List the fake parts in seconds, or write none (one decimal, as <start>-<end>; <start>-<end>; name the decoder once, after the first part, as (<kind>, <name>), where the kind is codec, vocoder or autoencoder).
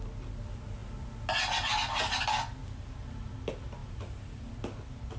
2.6-3.3 (vocoder, BigVGAN v2); 3.8-4.5